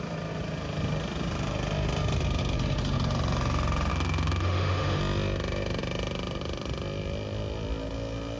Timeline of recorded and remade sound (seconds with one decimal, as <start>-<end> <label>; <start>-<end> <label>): 0.0-3.9 recorded; 3.9-5.0 remade; 5.0-8.4 recorded